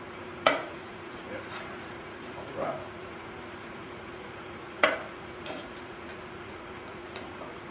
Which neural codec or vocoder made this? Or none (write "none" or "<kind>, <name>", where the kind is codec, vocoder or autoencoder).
vocoder, Vocos